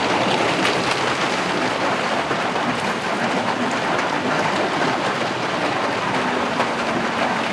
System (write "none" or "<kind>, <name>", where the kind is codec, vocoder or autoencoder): none